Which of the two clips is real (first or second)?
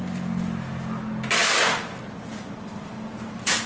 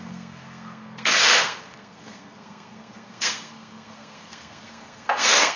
first